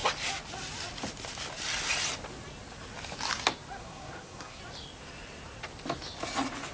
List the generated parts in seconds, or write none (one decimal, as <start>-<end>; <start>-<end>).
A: 3.8-4.6